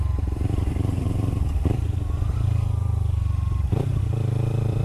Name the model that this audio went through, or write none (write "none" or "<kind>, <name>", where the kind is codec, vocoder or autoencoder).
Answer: vocoder, BigVGAN v2